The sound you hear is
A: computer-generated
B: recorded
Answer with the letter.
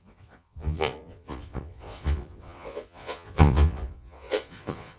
A